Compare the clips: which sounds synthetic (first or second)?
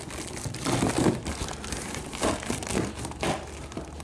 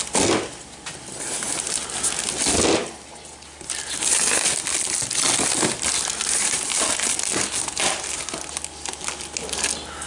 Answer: first